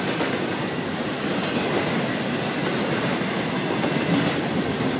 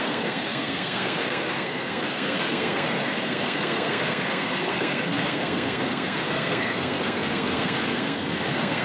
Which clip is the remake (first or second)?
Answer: second